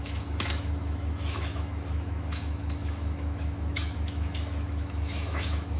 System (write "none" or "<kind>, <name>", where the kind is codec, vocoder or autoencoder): autoencoder, DAC-VAE